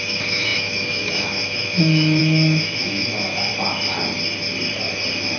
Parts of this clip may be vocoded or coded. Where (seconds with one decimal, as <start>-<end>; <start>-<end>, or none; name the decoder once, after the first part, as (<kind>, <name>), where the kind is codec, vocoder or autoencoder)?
0.0-3.5 (autoencoder, DAC-VAE)